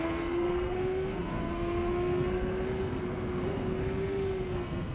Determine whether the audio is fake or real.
fake